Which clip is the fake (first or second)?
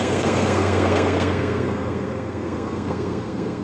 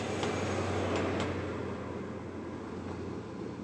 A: first